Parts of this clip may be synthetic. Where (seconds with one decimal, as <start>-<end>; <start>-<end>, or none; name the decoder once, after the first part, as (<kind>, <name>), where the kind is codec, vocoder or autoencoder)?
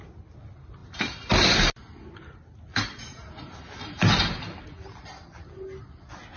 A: none